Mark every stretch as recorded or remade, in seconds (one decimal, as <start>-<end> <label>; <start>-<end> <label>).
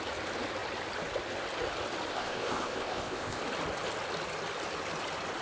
0.0-2.1 recorded; 2.1-3.4 remade; 3.4-5.4 recorded